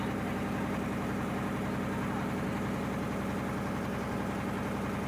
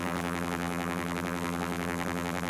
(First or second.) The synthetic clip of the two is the second